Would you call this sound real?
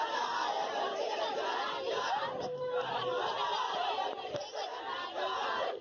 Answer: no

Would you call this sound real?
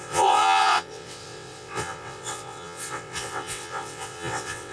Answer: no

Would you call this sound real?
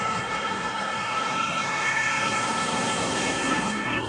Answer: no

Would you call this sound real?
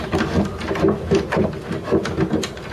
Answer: yes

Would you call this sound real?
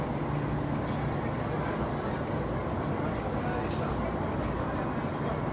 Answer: yes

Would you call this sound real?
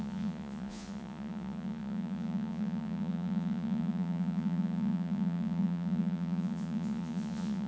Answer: no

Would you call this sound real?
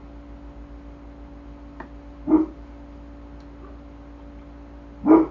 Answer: yes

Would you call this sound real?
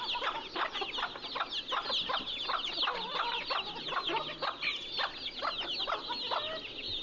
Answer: yes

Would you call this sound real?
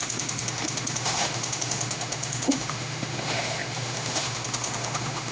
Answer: no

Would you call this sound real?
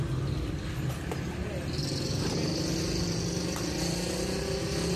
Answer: yes